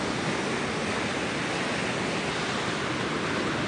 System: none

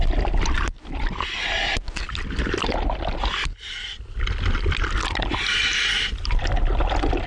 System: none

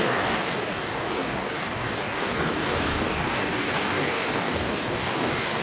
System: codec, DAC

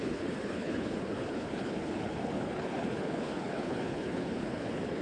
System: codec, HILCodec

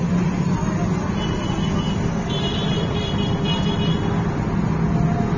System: none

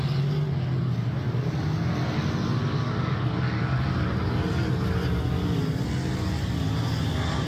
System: none